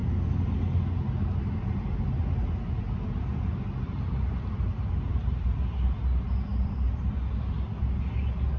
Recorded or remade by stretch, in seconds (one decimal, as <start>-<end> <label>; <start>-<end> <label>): 0.0-5.1 recorded; 5.1-5.6 remade; 5.6-6.5 recorded; 6.5-7.1 remade; 7.1-8.6 recorded